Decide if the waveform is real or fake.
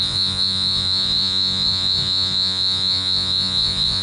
fake